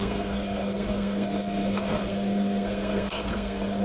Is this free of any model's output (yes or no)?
no